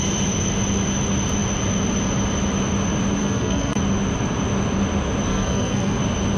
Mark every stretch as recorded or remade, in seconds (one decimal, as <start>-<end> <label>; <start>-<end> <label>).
0.0-3.2 recorded; 3.2-3.8 remade; 3.8-5.3 recorded; 5.3-6.0 remade; 6.0-6.4 recorded